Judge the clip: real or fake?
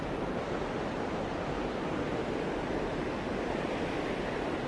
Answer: real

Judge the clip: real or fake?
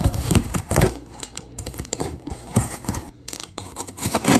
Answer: fake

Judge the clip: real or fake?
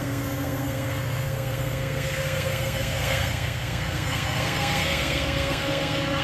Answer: fake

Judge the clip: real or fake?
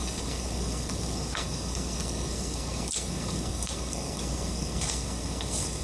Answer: fake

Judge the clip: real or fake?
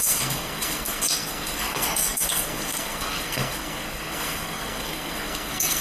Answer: fake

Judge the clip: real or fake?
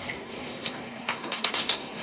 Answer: fake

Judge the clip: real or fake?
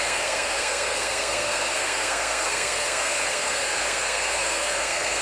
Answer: fake